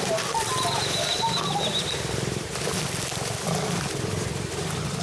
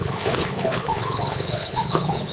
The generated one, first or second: second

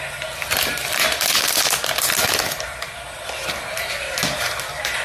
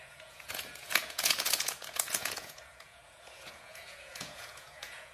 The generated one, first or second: second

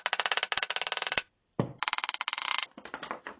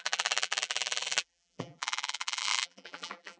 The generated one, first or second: second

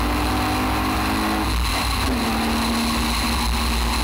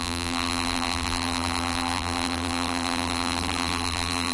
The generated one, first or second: second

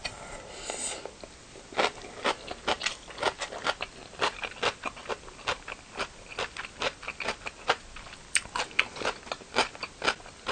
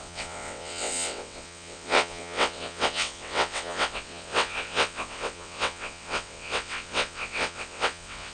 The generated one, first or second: second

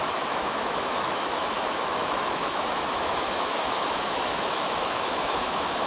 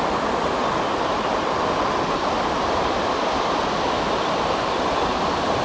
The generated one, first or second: first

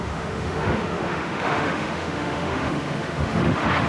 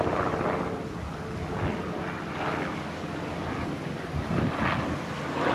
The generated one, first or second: first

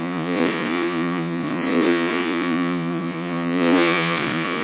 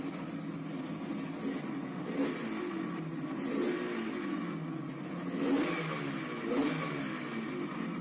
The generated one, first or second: first